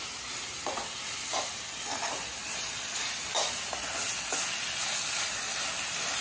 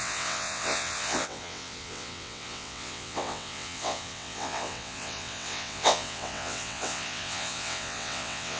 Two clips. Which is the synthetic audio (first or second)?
second